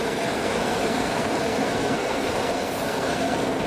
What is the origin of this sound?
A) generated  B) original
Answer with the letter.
A